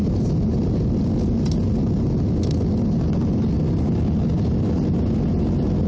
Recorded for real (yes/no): yes